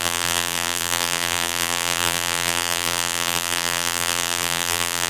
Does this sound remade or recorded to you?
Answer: remade